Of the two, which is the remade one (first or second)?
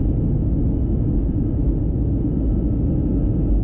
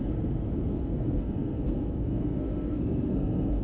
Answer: second